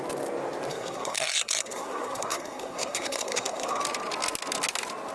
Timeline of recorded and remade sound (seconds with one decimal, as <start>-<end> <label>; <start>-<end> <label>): 0.0-0.7 recorded; 0.7-3.8 remade; 3.8-5.1 recorded